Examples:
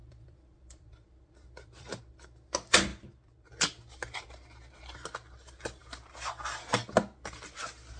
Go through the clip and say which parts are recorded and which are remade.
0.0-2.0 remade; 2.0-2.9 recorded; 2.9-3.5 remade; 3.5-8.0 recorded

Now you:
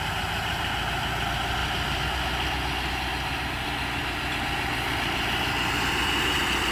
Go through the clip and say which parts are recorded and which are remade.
0.0-1.6 recorded; 1.6-2.9 remade; 2.9-6.7 recorded

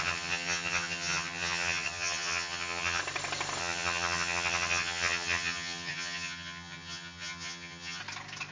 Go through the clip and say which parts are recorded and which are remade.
0.0-3.0 remade; 3.0-3.6 recorded; 3.6-8.0 remade; 8.0-8.5 recorded

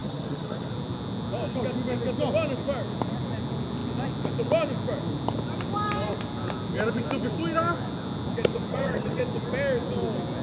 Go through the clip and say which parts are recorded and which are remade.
0.0-0.7 remade; 0.7-8.7 recorded; 8.7-9.2 remade; 9.2-10.4 recorded